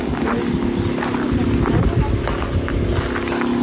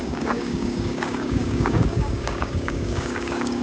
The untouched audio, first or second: first